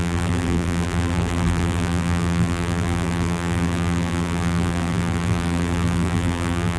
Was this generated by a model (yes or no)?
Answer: yes